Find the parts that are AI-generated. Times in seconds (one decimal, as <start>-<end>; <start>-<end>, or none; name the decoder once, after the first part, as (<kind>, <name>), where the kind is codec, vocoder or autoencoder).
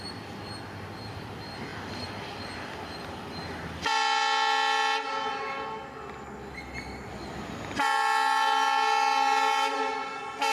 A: none